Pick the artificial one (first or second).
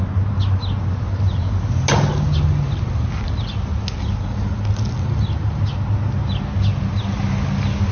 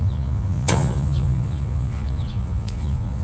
second